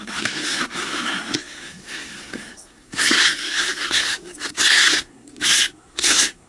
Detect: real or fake fake